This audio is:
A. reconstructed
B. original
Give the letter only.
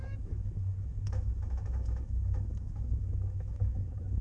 A